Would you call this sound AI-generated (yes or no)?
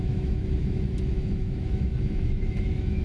yes